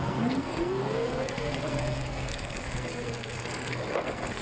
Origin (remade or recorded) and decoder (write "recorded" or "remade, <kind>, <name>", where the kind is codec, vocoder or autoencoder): remade, codec, SNAC